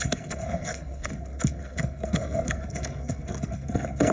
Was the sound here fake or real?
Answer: fake